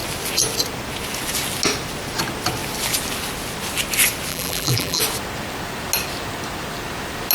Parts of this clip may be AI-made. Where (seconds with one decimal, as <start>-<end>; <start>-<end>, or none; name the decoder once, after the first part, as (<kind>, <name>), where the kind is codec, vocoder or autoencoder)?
4.3-5.0 (vocoder, BigVGAN v2)